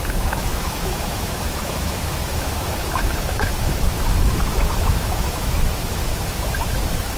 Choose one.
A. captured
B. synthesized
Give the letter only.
B